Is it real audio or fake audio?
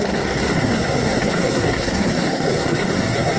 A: fake